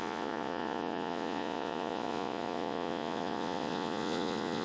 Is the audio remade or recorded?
remade